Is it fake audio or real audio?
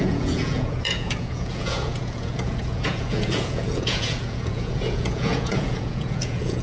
fake